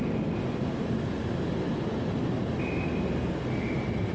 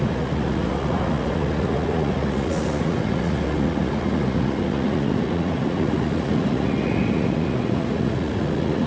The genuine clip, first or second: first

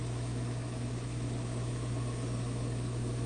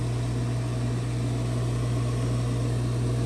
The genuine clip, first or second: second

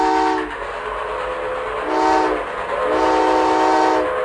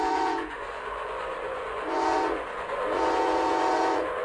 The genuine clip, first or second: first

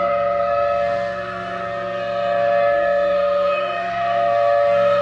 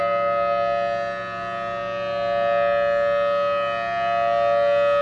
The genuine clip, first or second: second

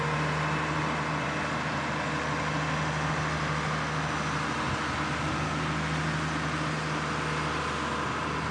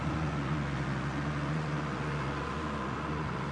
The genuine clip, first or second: first